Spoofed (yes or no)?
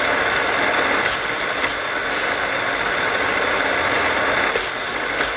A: no